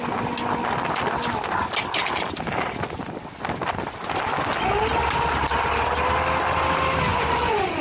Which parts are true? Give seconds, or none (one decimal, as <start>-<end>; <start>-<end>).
0.0-7.1